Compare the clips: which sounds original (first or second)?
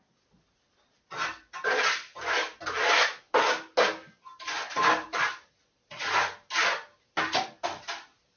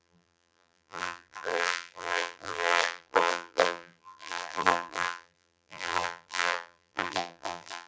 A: first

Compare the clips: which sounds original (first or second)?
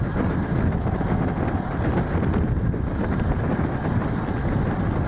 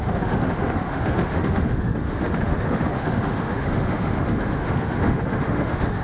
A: first